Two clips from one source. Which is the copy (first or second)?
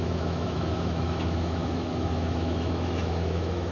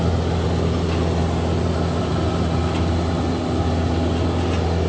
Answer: first